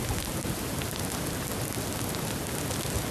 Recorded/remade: recorded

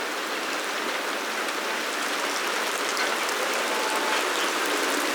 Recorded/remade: recorded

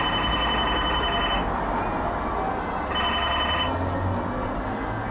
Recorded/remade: recorded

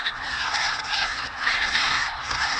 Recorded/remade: remade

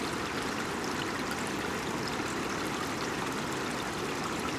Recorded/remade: recorded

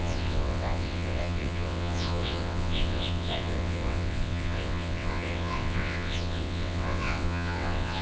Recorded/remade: remade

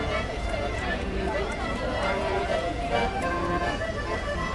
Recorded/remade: remade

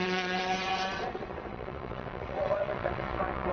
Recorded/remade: remade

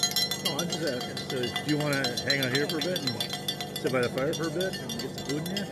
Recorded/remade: recorded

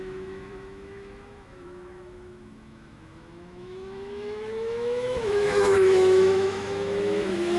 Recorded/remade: remade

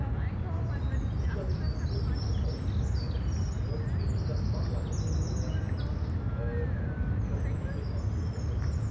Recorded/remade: recorded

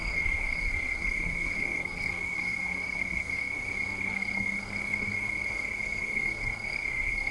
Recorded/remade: remade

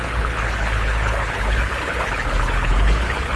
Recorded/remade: remade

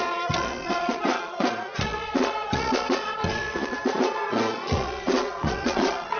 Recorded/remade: remade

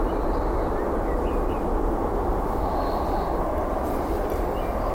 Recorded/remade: recorded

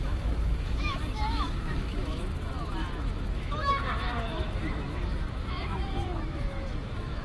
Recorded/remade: remade